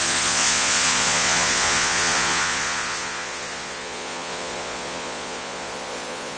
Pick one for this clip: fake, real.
fake